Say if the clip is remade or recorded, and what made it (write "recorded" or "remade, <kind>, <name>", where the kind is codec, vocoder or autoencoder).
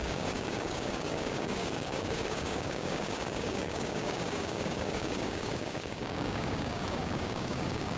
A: remade, codec, DAC